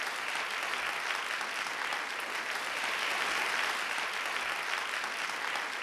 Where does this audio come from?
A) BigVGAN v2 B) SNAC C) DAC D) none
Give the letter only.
D